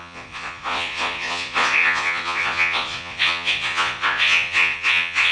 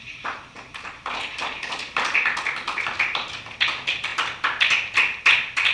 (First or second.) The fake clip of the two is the first